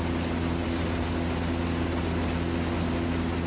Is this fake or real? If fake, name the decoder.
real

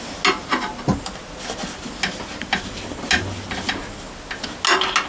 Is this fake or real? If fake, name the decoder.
real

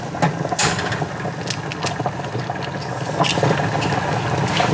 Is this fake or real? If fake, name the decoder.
real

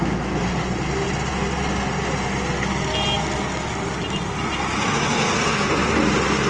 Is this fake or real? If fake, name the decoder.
real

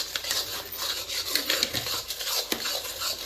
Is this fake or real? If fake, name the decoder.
real